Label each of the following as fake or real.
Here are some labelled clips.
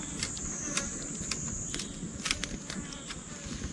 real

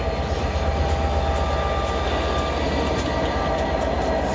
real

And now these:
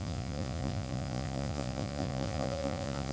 fake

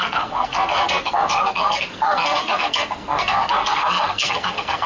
fake